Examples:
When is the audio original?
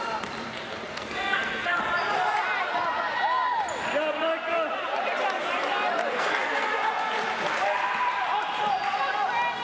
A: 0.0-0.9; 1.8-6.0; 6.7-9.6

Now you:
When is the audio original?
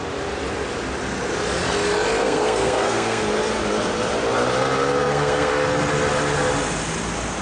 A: 0.0-2.2; 3.2-5.0; 5.5-7.4